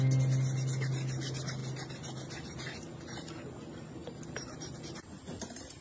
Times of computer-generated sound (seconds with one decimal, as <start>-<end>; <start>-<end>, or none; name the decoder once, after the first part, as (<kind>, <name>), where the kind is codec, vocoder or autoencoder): none